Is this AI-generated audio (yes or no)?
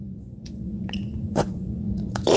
yes